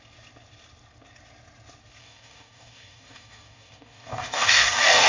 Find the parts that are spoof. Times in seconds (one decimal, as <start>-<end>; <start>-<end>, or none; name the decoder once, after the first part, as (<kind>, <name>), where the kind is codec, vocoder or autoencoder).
2.0-5.1 (codec, DAC)